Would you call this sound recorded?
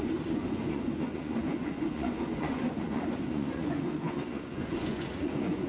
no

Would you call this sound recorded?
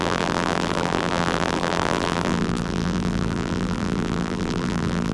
no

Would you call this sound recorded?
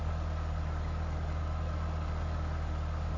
yes